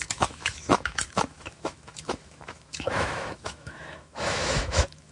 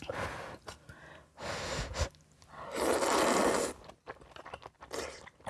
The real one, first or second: second